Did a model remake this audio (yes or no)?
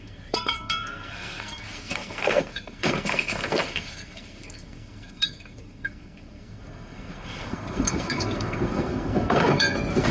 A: yes